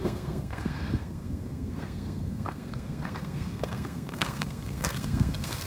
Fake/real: fake